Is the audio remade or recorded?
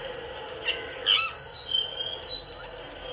recorded